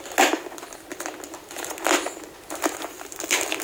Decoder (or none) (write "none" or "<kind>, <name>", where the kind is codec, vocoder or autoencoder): none